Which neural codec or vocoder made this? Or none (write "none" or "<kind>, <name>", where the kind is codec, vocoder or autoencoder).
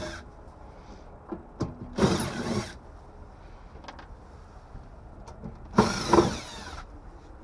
none